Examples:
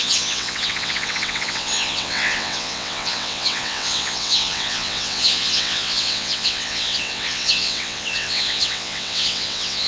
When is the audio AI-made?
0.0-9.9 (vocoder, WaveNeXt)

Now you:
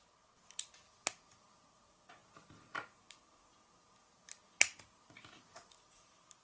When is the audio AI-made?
none

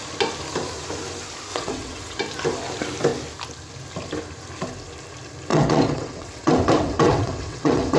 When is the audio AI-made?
1.5-2.2 (vocoder, WaveNeXt); 5.5-8.0

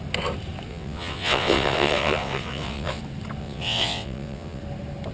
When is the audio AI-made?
0.7-3.0 (vocoder, WaveNeXt); 3.4-4.6

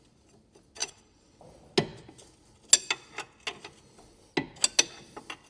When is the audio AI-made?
0.8-1.4 (vocoder, WaveNeXt)

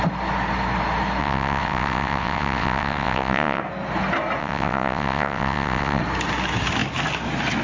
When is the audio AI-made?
1.2-3.6 (vocoder, WaveNeXt); 4.4-6.0